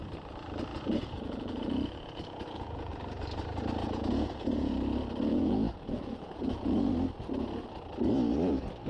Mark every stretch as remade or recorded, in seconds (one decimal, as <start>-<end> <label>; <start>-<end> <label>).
0.0-0.7 recorded; 0.7-2.9 remade; 2.9-3.8 recorded; 3.8-4.7 remade; 4.7-5.3 recorded; 5.3-6.9 remade; 6.9-8.9 recorded